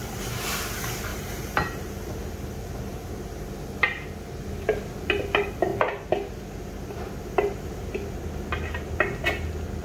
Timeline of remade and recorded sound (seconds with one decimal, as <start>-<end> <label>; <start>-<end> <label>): 0.0-1.1 recorded; 1.1-2.1 remade; 2.1-9.8 recorded